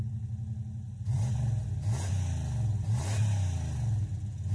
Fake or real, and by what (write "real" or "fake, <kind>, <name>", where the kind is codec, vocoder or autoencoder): real